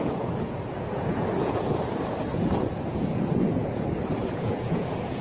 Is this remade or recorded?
remade